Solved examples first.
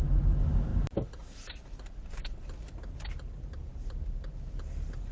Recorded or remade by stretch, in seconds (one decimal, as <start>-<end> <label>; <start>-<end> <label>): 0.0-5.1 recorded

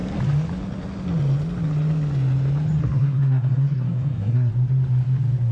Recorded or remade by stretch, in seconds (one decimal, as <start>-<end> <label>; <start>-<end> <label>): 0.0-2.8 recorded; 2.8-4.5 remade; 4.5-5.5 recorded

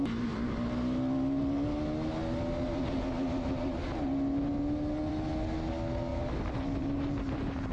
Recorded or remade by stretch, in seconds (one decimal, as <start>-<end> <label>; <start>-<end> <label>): 0.0-7.7 recorded

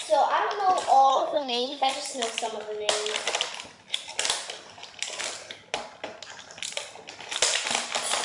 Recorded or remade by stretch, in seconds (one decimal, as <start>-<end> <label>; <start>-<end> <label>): 0.0-1.1 recorded; 1.1-1.9 remade; 1.9-8.2 recorded

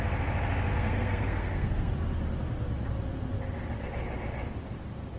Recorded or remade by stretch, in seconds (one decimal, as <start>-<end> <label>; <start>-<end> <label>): 0.0-0.7 recorded; 0.7-1.9 remade; 1.9-5.2 recorded

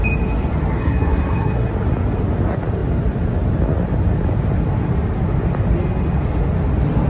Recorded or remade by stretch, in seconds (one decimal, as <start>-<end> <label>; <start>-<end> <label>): 0.0-0.8 recorded; 0.8-1.7 remade; 1.7-7.1 recorded

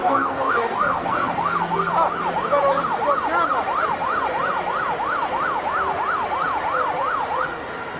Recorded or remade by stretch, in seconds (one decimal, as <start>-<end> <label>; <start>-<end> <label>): 0.0-1.9 remade; 1.9-8.0 recorded

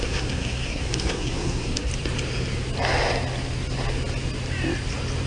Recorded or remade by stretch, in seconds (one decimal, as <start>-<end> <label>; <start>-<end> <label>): 0.0-1.9 remade; 1.9-5.3 recorded